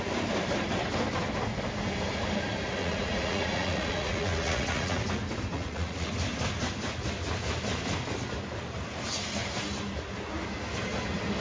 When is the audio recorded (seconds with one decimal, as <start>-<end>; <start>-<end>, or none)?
0.0-2.8; 5.0-5.5; 6.1-11.4